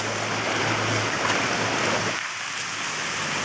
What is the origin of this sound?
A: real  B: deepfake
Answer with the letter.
A